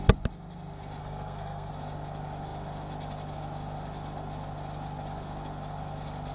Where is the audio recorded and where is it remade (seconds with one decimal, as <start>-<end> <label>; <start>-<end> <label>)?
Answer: 0.0-1.0 recorded; 1.0-1.7 remade; 1.7-6.3 recorded